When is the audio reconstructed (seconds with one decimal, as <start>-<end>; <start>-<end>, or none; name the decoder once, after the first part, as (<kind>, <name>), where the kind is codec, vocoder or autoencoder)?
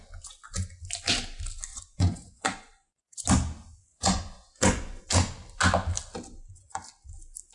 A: 1.7-3.2 (vocoder, Vocos); 3.9-5.0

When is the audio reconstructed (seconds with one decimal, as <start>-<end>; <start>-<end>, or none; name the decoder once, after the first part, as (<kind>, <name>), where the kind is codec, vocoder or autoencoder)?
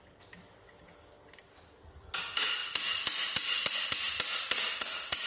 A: none